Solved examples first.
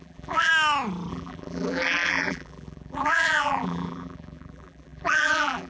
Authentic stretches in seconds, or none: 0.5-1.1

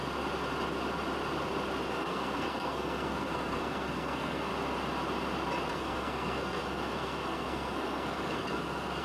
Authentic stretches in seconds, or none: 0.0-1.9; 4.5-5.7

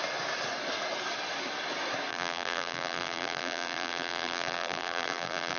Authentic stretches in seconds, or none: 0.0-2.1

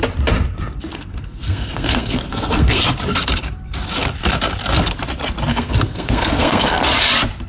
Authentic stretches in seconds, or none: 0.0-0.9; 2.8-5.5; 6.8-7.5

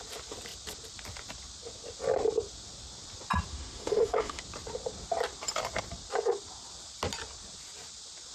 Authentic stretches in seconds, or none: 0.0-3.5; 4.4-8.3

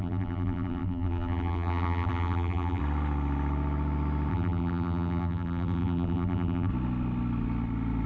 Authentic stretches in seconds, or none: 2.8-4.3; 6.7-8.1